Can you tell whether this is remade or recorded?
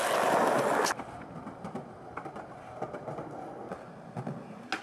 recorded